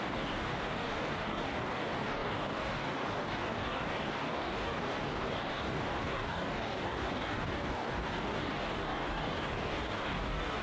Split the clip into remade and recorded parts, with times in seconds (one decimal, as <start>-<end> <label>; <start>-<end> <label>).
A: 0.0-10.6 remade